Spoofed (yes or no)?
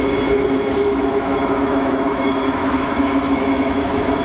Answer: yes